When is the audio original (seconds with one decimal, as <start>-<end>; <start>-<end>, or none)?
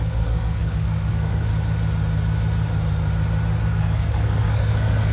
1.5-3.8